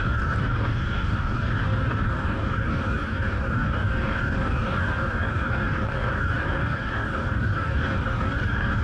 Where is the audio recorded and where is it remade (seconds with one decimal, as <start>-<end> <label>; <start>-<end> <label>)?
0.0-8.8 remade